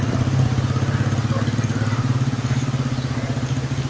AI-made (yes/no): no